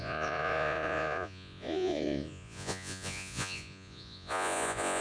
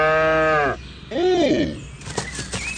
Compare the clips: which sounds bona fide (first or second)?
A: second